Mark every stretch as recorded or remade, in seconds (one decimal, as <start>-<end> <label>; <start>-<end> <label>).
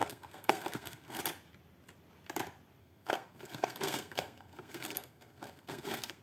0.0-1.2 remade; 1.2-2.8 recorded; 2.8-6.2 remade